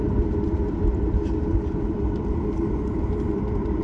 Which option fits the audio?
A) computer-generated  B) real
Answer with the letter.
A